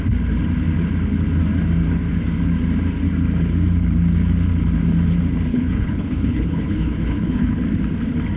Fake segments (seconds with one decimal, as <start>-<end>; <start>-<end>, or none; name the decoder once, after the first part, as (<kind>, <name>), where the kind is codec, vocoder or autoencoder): 5.5-7.6 (codec, HILCodec)